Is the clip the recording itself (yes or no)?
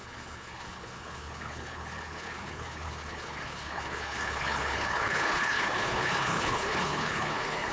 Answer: no